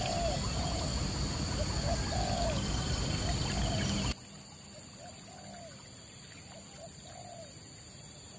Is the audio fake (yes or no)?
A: no